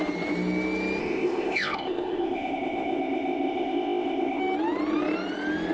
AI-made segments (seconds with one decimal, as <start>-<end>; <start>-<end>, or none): 1.0-4.4